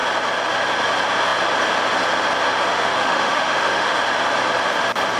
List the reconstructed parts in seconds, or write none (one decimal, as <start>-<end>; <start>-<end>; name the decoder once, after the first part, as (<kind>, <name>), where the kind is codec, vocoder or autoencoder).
2.7-4.0 (autoencoder, DAC-VAE)